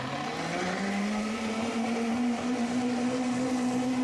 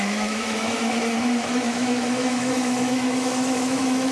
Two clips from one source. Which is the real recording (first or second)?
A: first